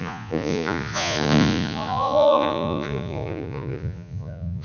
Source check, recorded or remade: remade